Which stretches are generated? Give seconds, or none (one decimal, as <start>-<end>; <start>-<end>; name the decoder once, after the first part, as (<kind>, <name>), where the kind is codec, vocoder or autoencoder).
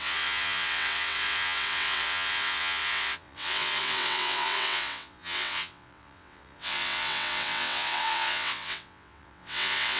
0.0-10.0 (vocoder, WaveNeXt)